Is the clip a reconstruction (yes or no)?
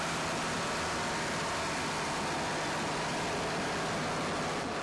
no